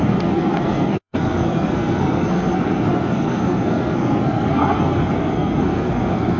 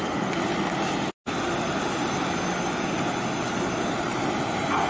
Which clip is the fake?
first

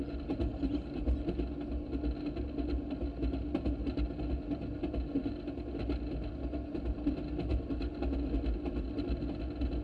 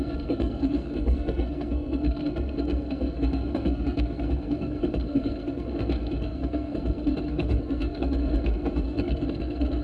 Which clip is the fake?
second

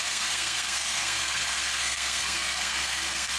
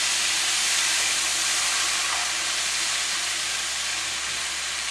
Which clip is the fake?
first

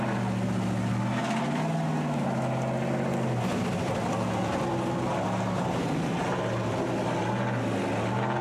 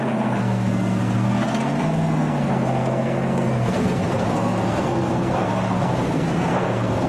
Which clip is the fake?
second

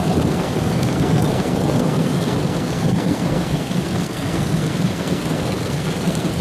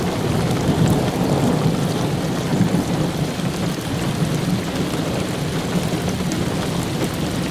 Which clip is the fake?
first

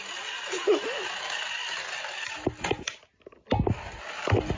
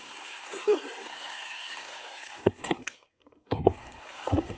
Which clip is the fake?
second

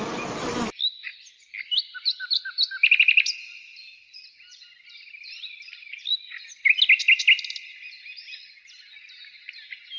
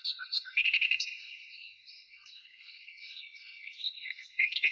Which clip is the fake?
second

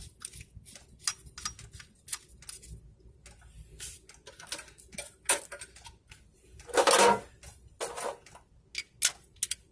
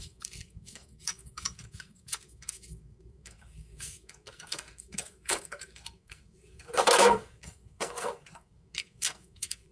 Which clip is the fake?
second